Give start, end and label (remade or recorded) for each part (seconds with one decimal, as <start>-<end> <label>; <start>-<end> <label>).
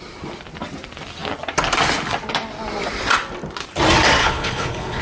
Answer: 0.0-4.2 recorded; 4.2-5.0 remade